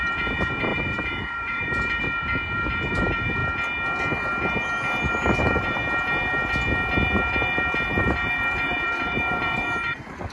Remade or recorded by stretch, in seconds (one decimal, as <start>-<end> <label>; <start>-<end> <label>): 0.0-3.4 remade; 3.4-5.1 recorded; 5.1-5.8 remade; 5.8-8.0 recorded; 8.0-10.3 remade